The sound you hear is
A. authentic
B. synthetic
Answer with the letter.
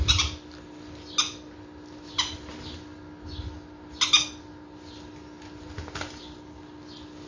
A